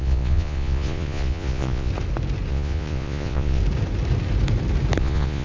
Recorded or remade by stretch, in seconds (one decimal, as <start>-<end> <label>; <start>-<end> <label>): 0.0-1.9 remade; 1.9-2.5 recorded; 2.5-3.6 remade; 3.6-5.0 recorded; 5.0-5.4 remade